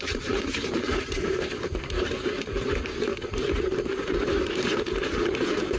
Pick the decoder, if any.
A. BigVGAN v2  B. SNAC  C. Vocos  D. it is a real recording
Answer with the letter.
A